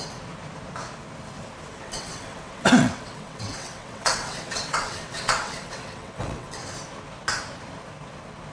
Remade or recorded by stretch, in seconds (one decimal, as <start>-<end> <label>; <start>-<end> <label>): 0.0-1.7 recorded; 1.7-6.6 remade; 6.6-8.5 recorded